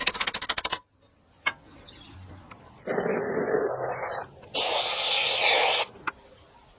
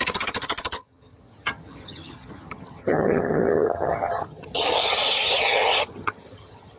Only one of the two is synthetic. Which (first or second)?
second